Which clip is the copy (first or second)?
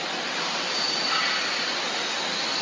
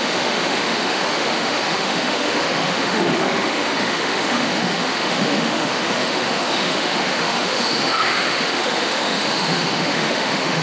second